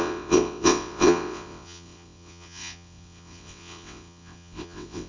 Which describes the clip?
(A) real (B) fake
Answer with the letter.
B